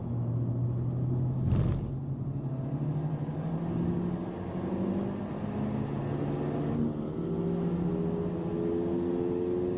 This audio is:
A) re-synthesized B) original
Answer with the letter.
B